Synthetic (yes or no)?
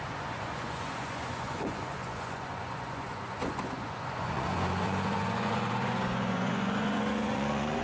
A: yes